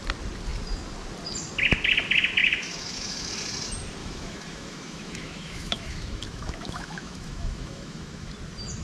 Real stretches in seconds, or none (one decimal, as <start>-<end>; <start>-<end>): 0.0-2.4; 3.3-4.0; 8.3-8.8